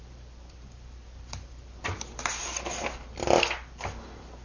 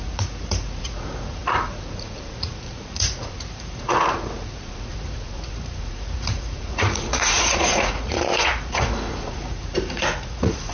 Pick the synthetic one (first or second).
second